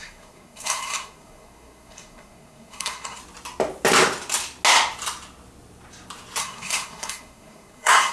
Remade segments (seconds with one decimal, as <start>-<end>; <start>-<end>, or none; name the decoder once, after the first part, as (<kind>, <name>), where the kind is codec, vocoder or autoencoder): 0.0-3.2 (codec, SNAC); 6.4-8.1